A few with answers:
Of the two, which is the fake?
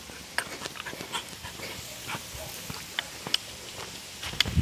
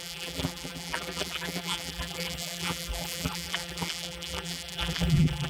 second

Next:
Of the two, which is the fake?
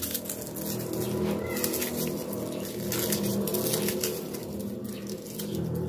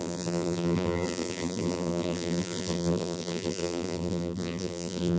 second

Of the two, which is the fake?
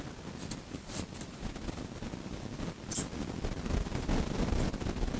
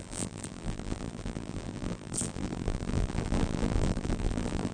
second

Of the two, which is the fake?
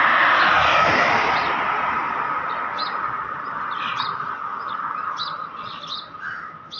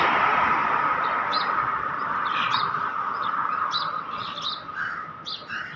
second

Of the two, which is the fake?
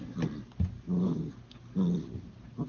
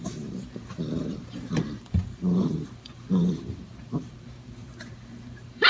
second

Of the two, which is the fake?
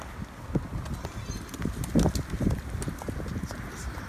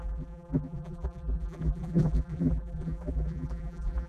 second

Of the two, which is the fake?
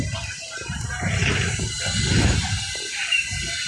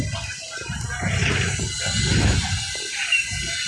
first